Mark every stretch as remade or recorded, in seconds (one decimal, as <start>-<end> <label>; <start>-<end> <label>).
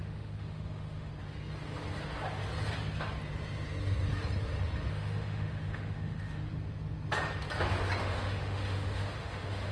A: 0.0-1.1 remade; 1.1-4.9 recorded; 4.9-6.5 remade; 6.5-8.0 recorded; 8.0-9.7 remade